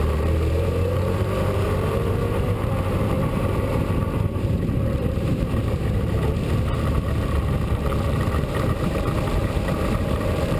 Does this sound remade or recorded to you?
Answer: remade